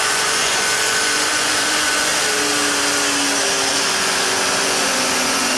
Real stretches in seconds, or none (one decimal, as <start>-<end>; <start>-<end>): 2.1-3.7